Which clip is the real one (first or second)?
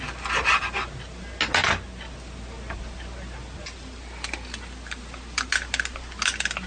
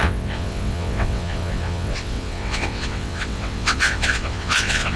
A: first